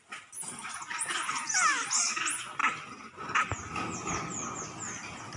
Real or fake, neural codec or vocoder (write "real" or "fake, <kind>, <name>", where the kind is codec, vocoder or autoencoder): real